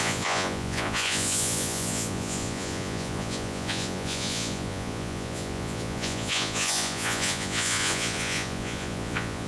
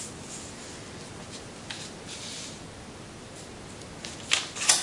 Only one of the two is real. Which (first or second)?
second